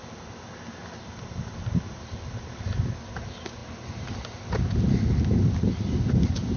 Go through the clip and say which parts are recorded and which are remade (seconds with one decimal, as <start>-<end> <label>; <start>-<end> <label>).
0.0-6.6 recorded